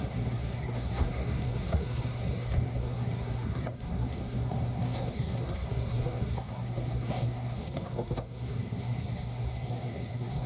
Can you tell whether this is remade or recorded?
remade